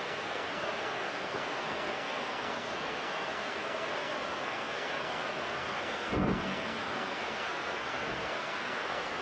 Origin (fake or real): fake